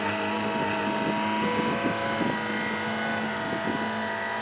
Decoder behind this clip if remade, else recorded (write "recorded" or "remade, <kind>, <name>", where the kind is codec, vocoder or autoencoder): recorded